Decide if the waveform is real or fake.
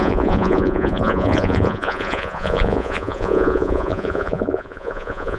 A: fake